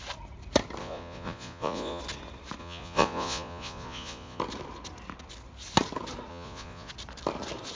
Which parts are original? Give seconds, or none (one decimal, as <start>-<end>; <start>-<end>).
0.0-0.8; 2.0-2.6; 4.4-6.3; 6.9-7.8